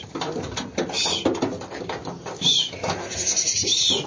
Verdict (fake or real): real